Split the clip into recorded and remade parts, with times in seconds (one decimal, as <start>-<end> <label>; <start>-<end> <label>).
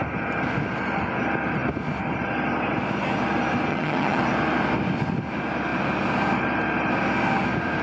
0.0-3.7 recorded; 3.7-4.2 remade; 4.2-7.8 recorded